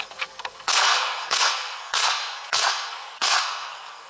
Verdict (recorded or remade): remade